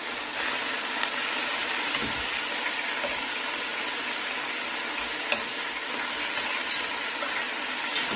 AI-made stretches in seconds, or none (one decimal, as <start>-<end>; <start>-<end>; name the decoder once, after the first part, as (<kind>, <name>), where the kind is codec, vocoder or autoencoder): none

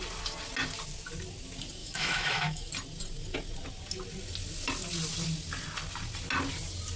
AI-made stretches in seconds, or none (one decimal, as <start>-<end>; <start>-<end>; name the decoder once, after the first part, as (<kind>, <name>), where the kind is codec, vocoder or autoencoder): 1.8-2.7 (autoencoder, DAC-VAE)

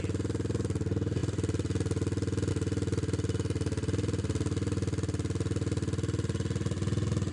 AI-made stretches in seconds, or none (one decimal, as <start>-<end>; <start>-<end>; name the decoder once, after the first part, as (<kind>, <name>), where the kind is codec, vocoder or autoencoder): none

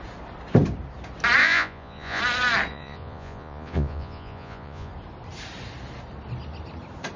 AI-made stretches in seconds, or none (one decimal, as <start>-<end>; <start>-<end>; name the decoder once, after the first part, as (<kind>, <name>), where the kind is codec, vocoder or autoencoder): 1.4-2.2 (vocoder, Vocos); 2.7-4.9

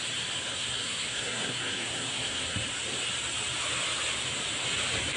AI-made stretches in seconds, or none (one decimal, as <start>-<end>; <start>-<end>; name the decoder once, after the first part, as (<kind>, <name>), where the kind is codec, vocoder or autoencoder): 0.5-2.6 (codec, SNAC)